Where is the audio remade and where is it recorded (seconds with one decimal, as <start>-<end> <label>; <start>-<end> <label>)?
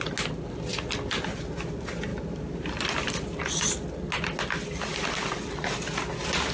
0.0-2.1 recorded; 2.1-3.4 remade; 3.4-6.5 recorded